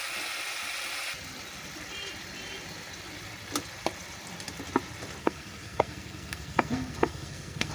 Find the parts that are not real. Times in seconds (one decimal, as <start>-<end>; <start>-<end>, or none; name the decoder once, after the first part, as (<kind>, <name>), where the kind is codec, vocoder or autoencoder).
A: 5.2-7.7 (codec, SNAC)